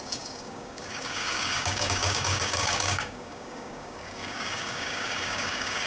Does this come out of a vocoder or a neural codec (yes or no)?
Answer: yes